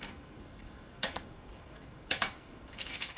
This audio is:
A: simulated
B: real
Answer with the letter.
A